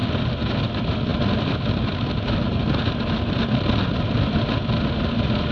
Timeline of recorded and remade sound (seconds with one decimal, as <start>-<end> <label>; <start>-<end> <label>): 0.0-5.5 recorded